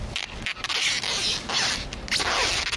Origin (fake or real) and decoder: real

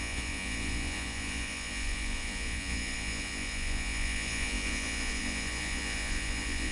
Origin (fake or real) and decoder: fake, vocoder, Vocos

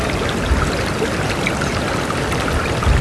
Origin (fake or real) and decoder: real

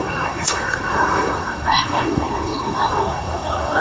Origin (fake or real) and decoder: fake, codec, SNAC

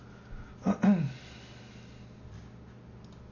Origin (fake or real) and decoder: real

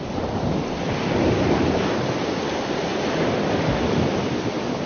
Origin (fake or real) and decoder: real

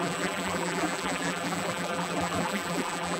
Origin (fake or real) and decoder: fake, vocoder, BigVGAN v2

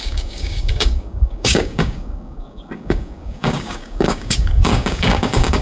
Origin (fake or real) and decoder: fake, codec, DAC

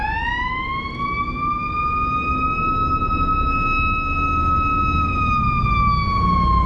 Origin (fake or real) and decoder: real